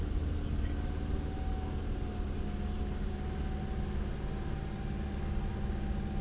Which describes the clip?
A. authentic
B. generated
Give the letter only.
A